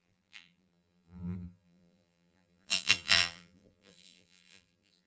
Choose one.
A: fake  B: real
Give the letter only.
A